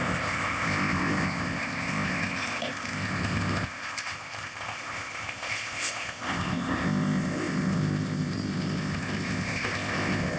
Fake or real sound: fake